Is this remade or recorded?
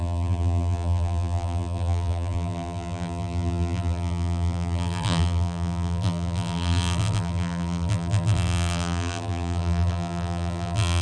remade